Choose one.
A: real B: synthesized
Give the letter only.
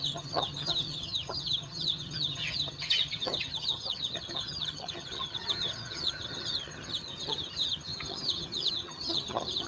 B